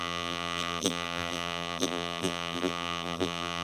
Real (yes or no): no